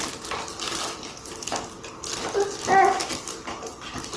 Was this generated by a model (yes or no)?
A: no